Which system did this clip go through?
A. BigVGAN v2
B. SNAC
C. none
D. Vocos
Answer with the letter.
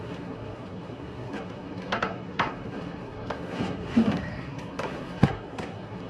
B